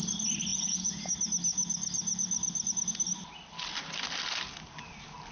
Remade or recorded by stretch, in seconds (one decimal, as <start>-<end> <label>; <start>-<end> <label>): 0.0-0.5 recorded; 0.5-1.1 remade; 1.1-5.3 recorded